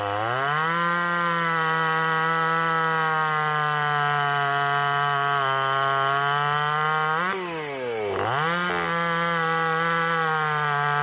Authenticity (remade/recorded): recorded